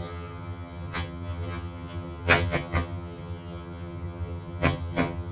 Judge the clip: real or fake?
fake